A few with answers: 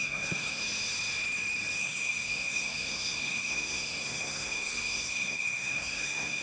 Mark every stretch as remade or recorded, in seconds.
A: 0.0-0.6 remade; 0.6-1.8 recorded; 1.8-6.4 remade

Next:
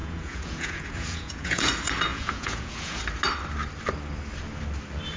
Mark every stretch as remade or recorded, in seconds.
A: 0.0-1.7 remade; 1.7-2.1 recorded; 2.1-3.0 remade; 3.0-5.2 recorded

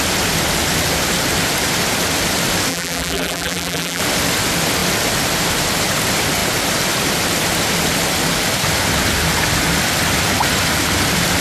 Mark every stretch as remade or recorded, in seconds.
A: 0.0-2.7 recorded; 2.7-4.0 remade; 4.0-11.4 recorded

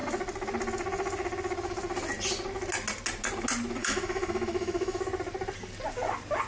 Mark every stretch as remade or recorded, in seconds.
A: 0.0-3.8 recorded; 3.8-5.0 remade; 5.0-6.5 recorded

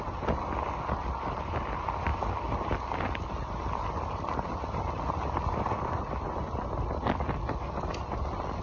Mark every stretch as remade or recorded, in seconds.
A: 0.0-8.6 recorded